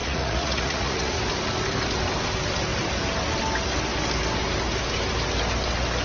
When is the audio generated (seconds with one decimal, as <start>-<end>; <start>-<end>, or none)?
0.0-1.2